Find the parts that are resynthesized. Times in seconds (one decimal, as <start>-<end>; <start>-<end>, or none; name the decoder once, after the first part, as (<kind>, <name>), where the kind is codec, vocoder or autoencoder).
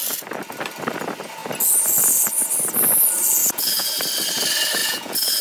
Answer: 3.4-3.9 (vocoder, Vocos); 4.8-5.4